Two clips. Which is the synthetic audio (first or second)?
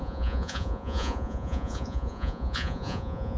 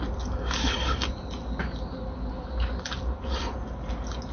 first